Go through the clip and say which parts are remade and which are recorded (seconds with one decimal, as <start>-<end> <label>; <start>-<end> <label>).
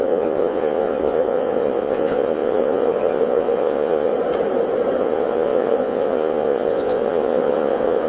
0.0-4.1 remade; 4.1-5.0 recorded; 5.0-8.1 remade